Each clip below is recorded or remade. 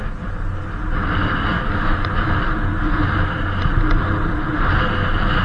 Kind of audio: recorded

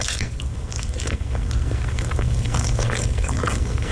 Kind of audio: remade